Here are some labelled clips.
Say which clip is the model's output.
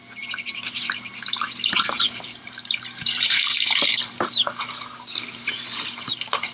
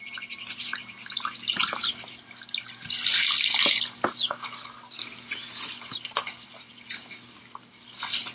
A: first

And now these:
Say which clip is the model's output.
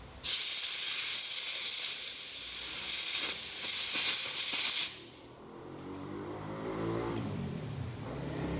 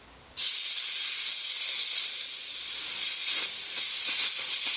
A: first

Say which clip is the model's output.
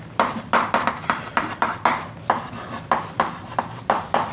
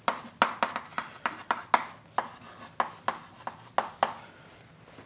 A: first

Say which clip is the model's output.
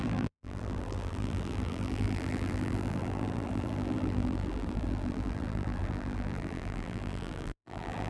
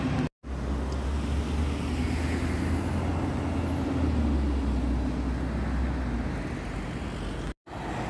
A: first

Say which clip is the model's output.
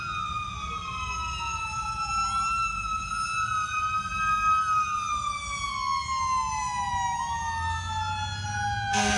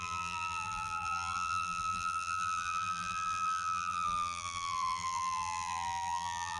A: second